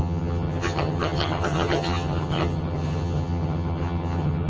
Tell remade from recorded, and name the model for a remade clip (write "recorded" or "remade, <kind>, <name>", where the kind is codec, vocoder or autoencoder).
remade, vocoder, HiFi-GAN